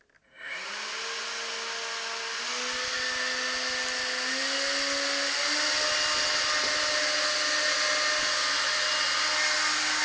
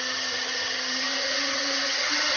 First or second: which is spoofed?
second